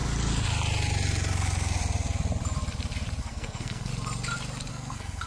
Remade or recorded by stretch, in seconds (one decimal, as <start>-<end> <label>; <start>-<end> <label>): 0.0-3.2 recorded; 3.2-3.9 remade; 3.9-4.7 recorded; 4.7-5.3 remade